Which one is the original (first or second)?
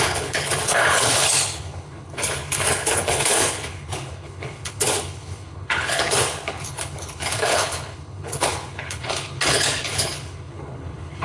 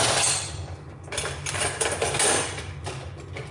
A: second